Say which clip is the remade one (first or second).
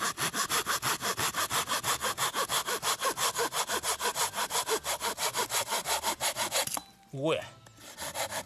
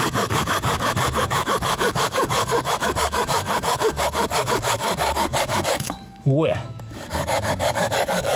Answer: second